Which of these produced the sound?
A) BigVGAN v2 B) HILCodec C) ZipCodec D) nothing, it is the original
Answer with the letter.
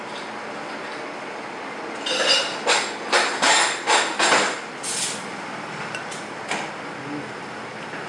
D